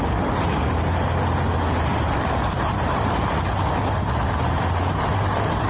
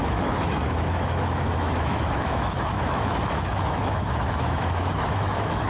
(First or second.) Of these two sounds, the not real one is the second